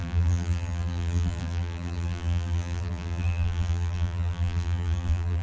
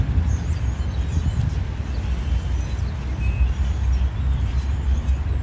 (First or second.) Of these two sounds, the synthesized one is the first